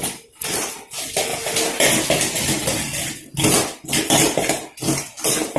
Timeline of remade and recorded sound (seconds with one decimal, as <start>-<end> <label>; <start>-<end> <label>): 0.0-5.6 recorded